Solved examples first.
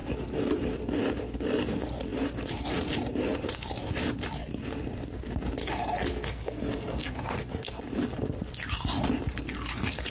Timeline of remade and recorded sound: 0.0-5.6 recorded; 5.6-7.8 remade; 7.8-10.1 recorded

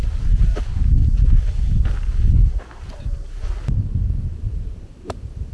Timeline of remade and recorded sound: 0.0-1.0 remade; 1.0-4.3 recorded; 4.3-5.5 remade